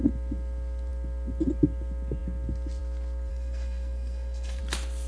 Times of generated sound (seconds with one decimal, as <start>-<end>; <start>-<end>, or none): 3.3-4.6